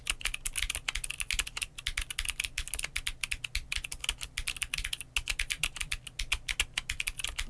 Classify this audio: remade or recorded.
recorded